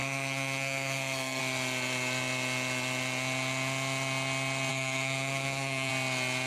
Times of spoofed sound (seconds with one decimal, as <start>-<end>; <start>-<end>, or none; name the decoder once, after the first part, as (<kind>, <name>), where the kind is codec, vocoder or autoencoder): 0.0-1.4 (codec, SNAC); 4.7-5.9